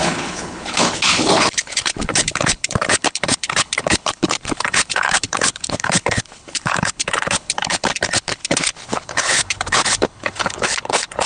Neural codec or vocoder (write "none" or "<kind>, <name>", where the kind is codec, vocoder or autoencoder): codec, HILCodec